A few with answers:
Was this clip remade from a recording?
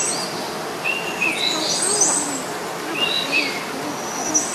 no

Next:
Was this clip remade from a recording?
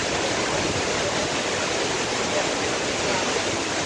no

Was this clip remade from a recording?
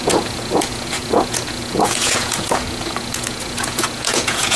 yes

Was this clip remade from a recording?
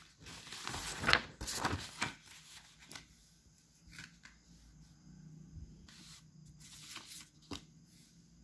no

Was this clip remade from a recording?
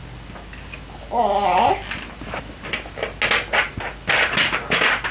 no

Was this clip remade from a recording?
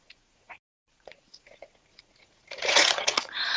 yes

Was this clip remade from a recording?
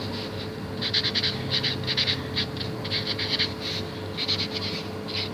no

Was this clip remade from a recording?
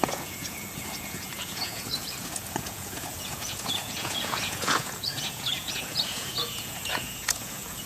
yes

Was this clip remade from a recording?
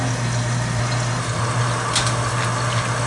no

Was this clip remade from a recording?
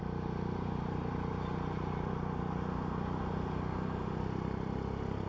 no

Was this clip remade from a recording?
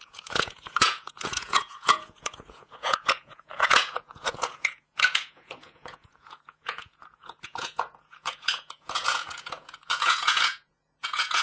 yes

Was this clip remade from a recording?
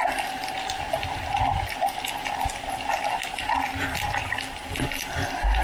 no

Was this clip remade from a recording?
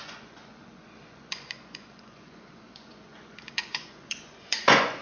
yes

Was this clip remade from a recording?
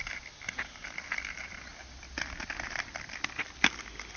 no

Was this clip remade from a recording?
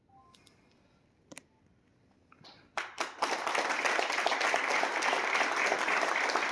no